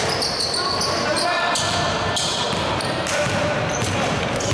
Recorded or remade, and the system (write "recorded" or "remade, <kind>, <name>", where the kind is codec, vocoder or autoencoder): recorded